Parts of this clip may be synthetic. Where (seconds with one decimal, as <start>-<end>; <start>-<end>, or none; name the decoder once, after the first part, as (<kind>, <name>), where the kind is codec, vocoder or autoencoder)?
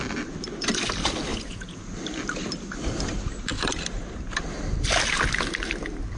1.3-1.8 (vocoder, Vocos)